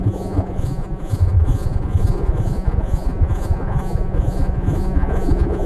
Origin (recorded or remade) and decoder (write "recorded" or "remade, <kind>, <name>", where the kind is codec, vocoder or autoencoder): remade, vocoder, Vocos